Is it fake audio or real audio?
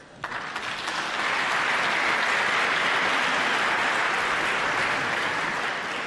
real